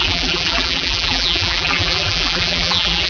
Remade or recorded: remade